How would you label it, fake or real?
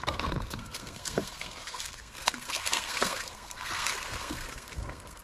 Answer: fake